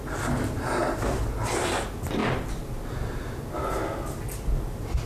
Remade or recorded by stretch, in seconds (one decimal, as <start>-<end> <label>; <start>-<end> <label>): 0.0-5.1 recorded